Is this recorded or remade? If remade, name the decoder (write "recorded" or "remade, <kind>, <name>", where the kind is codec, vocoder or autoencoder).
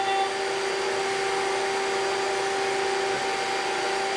recorded